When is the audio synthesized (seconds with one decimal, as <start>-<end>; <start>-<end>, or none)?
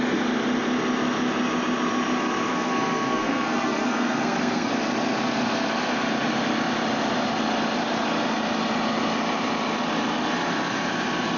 2.5-4.7